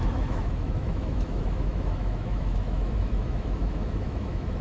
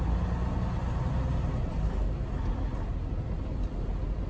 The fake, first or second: first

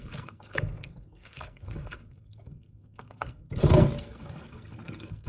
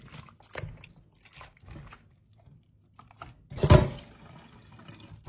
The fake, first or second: first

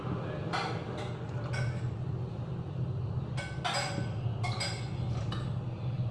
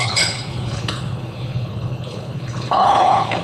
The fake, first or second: second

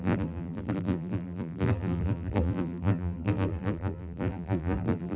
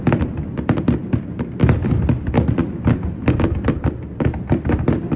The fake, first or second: first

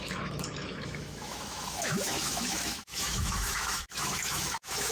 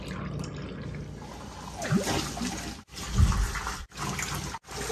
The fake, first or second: first